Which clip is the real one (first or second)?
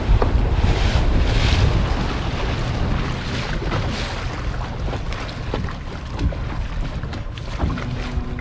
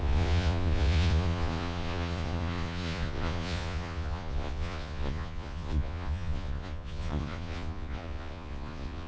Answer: first